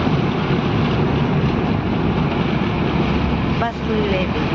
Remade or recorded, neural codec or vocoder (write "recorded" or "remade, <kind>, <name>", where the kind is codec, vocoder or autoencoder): recorded